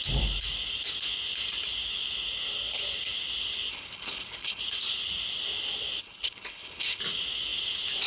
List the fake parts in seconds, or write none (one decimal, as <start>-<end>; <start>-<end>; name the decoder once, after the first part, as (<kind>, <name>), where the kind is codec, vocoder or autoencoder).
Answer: 3.7-4.6 (codec, HILCodec); 6.0-7.0